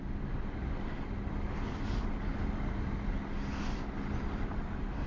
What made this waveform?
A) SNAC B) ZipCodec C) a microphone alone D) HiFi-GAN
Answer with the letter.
C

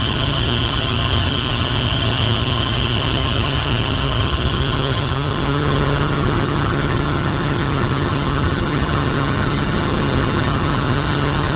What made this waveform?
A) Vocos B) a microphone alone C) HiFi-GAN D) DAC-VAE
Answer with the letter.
C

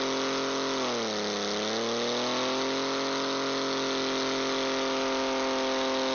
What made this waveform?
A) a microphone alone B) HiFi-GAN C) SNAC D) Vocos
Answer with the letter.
A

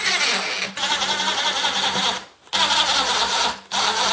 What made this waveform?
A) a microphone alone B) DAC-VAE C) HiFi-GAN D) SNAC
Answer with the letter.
A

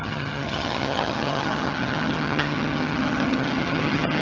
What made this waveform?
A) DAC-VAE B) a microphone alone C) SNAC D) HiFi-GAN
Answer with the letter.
D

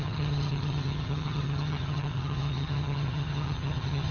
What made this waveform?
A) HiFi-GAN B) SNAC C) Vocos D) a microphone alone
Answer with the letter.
A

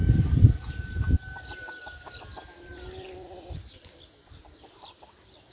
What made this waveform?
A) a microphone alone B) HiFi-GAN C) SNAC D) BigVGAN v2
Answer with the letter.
A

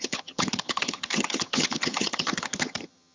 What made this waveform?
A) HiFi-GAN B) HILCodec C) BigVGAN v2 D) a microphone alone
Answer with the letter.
A